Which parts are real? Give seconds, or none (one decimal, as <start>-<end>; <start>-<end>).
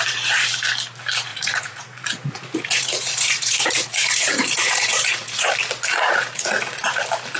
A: 0.0-1.3; 5.5-5.9; 7.0-7.4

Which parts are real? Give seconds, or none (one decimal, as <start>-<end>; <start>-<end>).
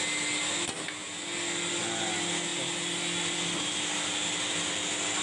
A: 0.0-5.2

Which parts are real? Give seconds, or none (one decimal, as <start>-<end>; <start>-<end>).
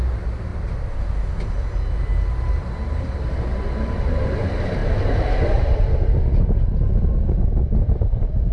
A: 0.0-8.5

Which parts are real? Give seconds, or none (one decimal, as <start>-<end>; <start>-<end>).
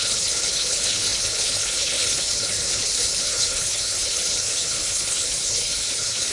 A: none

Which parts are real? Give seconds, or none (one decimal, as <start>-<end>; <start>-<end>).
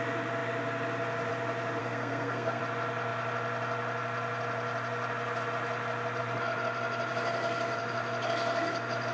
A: 0.0-1.8; 2.6-9.1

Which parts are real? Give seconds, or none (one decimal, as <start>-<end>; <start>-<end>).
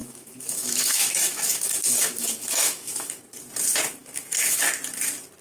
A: 3.2-4.0; 4.6-5.4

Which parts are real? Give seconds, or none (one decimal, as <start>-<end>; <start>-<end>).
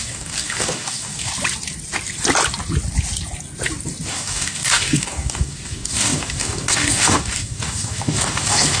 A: 1.3-4.1